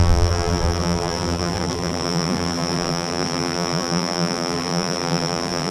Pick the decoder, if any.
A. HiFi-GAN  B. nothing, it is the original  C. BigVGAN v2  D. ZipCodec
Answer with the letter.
C